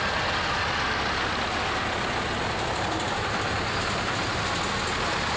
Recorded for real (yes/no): yes